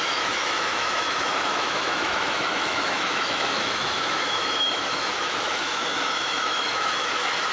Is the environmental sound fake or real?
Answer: fake